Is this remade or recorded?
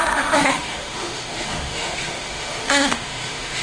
remade